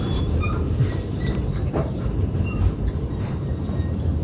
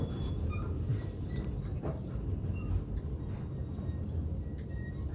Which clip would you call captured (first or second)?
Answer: second